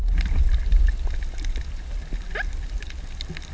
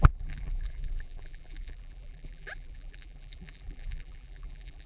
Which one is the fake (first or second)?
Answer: second